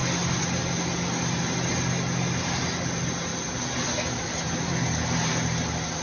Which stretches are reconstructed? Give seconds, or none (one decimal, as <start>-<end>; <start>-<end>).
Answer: none